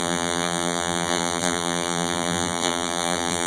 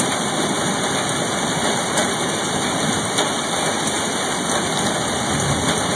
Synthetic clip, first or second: first